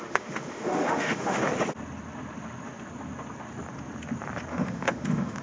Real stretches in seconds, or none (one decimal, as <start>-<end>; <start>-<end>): 1.4-4.5